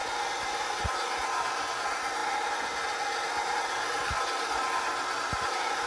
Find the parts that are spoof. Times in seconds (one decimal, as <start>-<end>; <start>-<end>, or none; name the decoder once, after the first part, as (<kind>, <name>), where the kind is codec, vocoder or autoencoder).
none